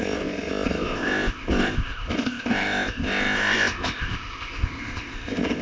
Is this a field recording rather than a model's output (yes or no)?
no